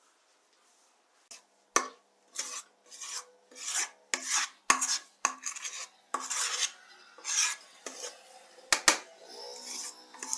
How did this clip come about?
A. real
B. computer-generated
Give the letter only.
A